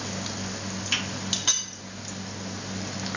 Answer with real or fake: real